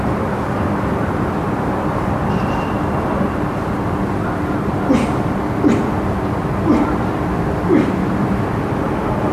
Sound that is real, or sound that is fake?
fake